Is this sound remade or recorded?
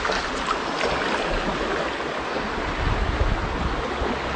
recorded